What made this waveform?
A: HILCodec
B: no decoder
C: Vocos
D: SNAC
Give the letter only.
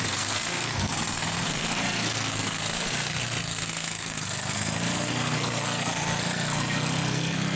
D